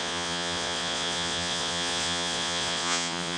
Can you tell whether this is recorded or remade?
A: remade